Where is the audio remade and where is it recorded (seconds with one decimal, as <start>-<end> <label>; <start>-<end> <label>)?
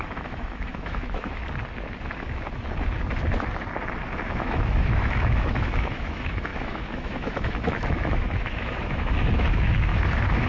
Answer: 0.0-1.4 remade; 1.4-4.2 recorded; 4.2-9.9 remade; 9.9-10.5 recorded